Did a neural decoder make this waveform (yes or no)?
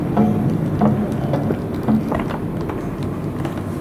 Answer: no